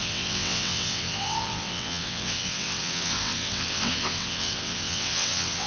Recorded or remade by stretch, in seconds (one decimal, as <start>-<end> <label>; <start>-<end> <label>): 0.0-5.7 remade